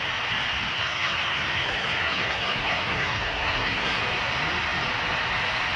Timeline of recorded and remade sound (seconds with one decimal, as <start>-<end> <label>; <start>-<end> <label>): 0.0-0.7 recorded; 0.7-4.0 remade; 4.0-5.8 recorded